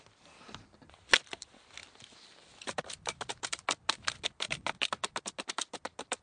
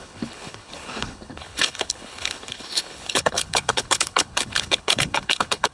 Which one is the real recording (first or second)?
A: first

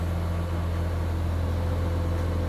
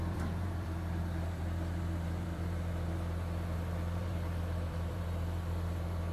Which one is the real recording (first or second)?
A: first